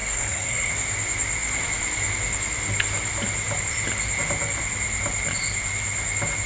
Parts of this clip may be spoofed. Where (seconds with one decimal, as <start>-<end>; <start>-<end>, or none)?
0.0-0.7